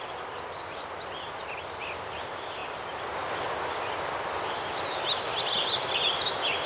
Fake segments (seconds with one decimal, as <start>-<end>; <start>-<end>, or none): none